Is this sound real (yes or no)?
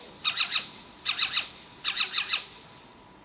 yes